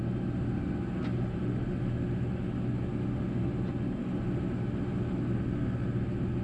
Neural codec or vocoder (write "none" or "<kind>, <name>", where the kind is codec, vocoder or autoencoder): none